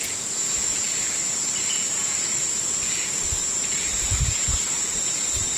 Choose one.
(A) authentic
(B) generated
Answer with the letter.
B